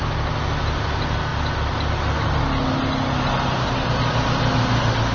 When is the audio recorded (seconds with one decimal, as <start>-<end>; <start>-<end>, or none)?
0.0-5.1